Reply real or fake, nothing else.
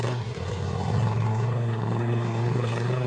fake